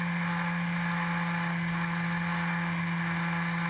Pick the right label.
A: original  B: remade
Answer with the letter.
A